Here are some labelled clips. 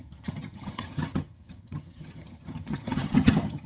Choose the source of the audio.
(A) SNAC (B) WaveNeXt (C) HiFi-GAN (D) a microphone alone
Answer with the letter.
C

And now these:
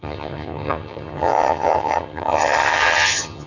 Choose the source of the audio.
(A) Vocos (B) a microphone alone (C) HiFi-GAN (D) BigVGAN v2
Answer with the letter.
C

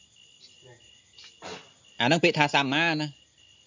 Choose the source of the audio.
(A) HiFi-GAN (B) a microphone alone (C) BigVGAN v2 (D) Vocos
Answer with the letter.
B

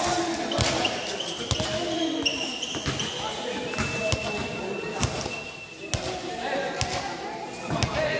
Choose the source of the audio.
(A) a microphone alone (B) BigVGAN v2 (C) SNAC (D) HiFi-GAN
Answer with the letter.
A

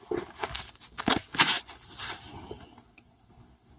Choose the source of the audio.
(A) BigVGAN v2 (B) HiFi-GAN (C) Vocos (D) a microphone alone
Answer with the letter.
D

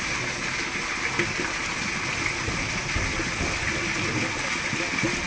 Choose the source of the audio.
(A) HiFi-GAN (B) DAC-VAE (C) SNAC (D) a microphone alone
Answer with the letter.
D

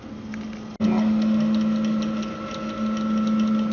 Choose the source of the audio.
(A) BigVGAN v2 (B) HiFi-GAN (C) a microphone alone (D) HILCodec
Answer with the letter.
C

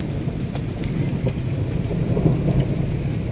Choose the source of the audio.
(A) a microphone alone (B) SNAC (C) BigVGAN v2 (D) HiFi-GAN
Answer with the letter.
A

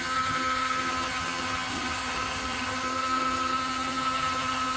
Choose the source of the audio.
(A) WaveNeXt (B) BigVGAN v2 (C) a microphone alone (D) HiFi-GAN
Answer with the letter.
D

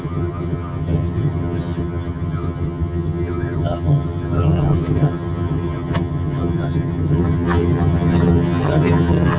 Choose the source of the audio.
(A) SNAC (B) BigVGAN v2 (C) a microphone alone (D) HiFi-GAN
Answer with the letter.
D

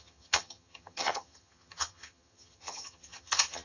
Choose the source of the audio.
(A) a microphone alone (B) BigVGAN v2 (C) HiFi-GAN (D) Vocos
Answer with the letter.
C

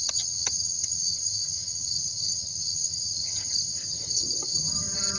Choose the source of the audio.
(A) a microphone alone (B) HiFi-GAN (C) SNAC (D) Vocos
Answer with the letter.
B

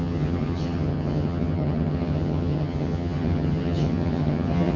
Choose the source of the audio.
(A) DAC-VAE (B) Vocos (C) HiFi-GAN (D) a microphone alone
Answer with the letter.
C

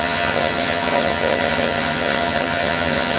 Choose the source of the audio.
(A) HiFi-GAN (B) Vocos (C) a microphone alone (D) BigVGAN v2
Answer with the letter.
A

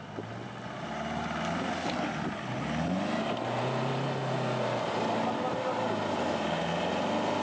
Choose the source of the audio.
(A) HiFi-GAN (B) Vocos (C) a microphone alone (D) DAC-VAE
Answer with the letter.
C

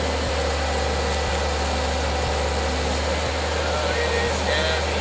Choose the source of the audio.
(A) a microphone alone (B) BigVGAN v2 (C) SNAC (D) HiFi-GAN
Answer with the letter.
A